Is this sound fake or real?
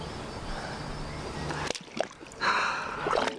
real